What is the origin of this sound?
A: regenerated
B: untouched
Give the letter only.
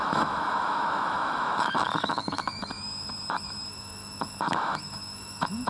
A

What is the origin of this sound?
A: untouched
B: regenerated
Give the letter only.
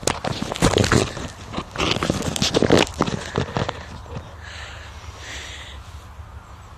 A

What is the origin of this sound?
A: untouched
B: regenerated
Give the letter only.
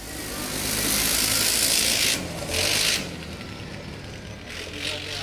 A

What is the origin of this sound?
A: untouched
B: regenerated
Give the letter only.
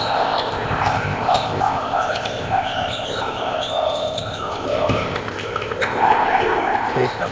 B